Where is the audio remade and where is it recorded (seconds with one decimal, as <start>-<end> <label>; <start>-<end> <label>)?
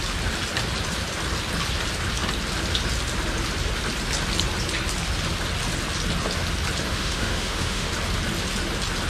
0.0-6.9 recorded; 6.9-7.9 remade; 7.9-9.1 recorded